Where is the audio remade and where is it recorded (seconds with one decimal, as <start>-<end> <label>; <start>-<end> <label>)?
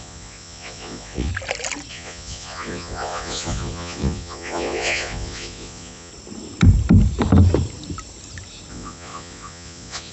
0.0-1.3 remade; 1.3-1.9 recorded; 1.9-6.1 remade; 6.1-8.7 recorded; 8.7-10.1 remade